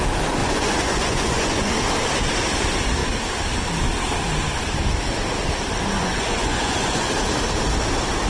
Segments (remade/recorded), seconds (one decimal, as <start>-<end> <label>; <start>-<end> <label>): 0.0-0.4 recorded; 0.4-1.7 remade; 1.7-6.0 recorded; 6.0-7.1 remade; 7.1-8.3 recorded